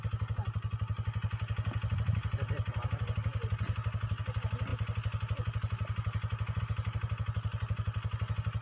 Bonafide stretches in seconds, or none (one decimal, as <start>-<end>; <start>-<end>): 0.0-8.6